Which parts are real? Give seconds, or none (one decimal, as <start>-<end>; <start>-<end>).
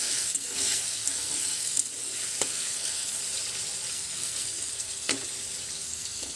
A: 1.9-2.4; 3.2-3.9; 5.1-5.7